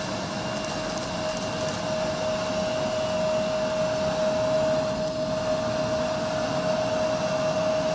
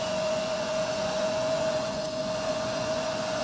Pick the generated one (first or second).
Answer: second